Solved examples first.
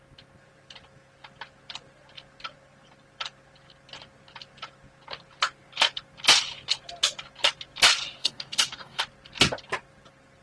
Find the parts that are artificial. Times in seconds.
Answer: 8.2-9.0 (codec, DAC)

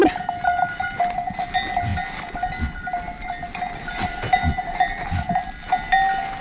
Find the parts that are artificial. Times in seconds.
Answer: none

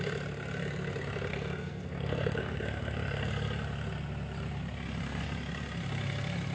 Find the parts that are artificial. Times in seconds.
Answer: 1.3-3.3 (codec, SNAC)

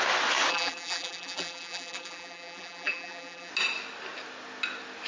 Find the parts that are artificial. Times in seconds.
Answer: 0.5-3.5 (vocoder, BigVGAN v2)

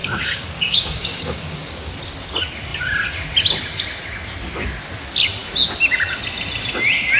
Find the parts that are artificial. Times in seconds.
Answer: 0.0-1.9 (codec, DAC)

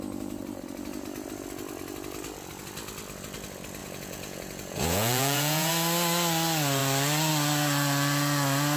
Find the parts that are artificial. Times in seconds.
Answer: 3.8-5.7 (vocoder, Vocos)

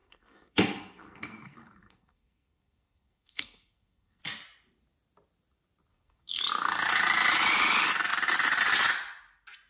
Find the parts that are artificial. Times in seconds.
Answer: 0.0-4.2 (codec, SNAC); 5.9-6.4